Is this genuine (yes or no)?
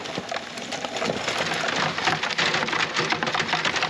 yes